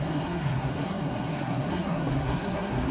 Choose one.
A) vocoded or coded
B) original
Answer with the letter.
A